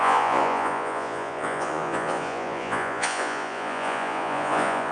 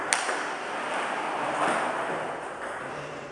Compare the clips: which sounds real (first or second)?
second